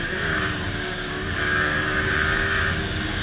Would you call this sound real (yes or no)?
no